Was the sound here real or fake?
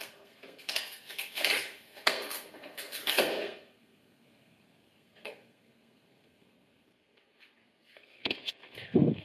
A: fake